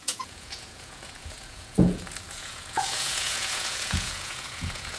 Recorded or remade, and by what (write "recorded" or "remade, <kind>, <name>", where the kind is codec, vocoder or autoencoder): remade, vocoder, Vocos